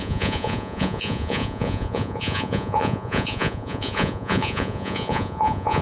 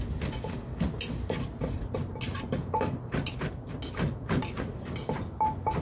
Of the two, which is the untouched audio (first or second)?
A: second